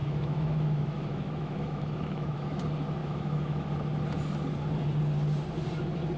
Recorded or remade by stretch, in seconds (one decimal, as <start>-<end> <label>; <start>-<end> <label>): 0.0-2.6 remade; 2.6-3.0 recorded; 3.0-3.7 remade; 3.7-6.2 recorded